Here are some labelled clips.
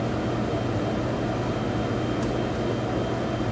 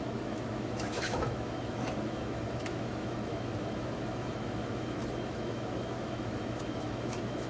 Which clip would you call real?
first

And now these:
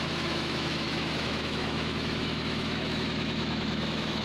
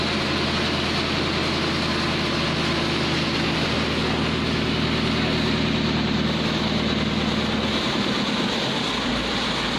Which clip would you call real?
second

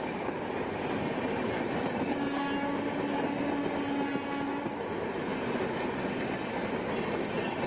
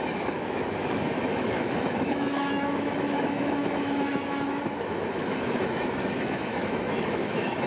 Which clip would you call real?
first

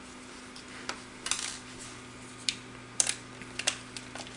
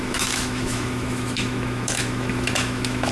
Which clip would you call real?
first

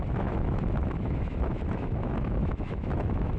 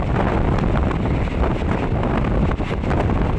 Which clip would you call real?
second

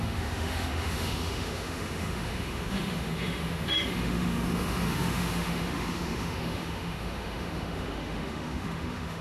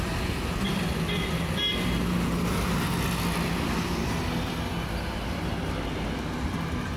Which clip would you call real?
second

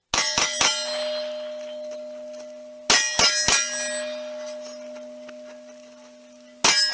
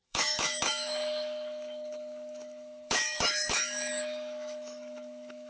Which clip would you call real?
first